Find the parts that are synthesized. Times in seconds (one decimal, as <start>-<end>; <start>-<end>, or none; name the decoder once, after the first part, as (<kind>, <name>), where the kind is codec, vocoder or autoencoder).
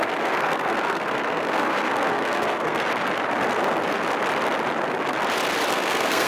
0.0-2.9 (codec, SNAC); 5.7-6.3